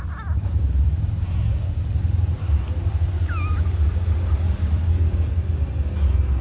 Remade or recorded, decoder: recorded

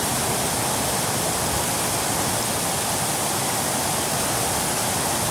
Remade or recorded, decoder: recorded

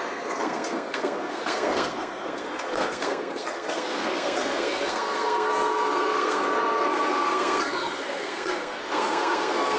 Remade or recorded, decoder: remade, codec, SNAC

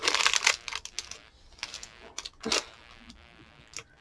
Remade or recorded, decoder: recorded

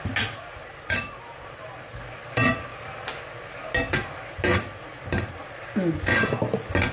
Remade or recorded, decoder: recorded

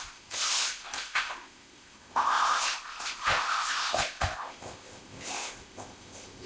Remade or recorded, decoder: remade, codec, ZipCodec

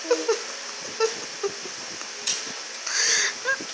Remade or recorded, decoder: recorded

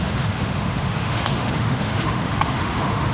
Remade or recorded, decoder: remade, autoencoder, DAC-VAE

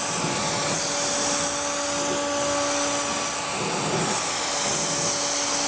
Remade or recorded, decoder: recorded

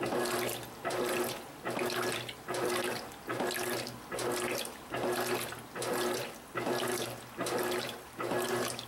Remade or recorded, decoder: recorded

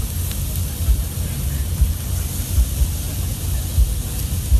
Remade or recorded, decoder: recorded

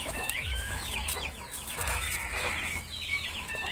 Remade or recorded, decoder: remade, autoencoder, DAC-VAE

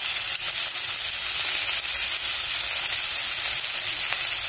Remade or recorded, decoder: recorded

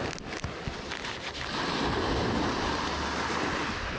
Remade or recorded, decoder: recorded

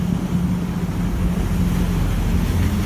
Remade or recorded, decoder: recorded